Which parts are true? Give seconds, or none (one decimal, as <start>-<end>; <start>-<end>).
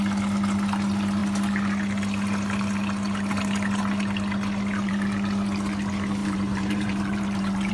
0.0-6.2